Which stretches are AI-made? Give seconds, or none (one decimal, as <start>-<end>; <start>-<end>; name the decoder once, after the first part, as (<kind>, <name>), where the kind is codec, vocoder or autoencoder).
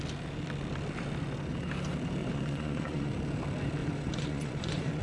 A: 2.2-3.1 (vocoder, Vocos); 3.8-5.0